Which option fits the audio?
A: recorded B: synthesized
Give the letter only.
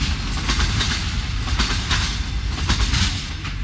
A